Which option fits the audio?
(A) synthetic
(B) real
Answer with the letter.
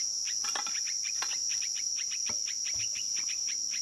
B